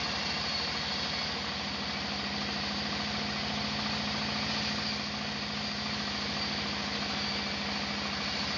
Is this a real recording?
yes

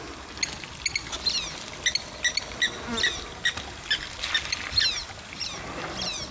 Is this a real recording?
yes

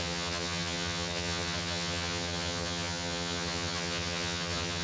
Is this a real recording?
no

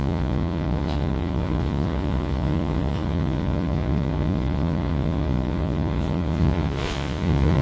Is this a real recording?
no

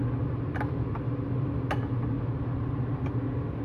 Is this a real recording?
yes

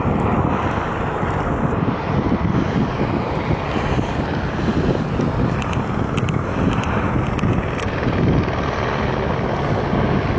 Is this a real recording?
yes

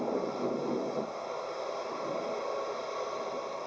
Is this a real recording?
no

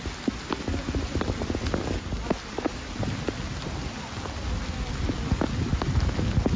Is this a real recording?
yes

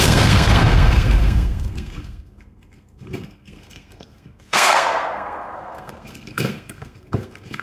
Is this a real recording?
no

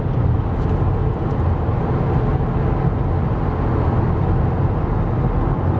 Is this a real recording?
yes